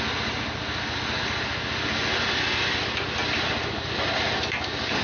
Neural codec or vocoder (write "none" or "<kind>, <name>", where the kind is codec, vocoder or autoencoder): none